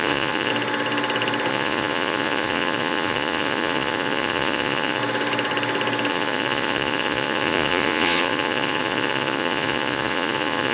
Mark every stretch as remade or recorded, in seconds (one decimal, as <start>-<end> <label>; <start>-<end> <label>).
0.0-0.5 remade; 0.5-1.5 recorded; 1.5-5.0 remade; 5.0-6.1 recorded; 6.1-10.7 remade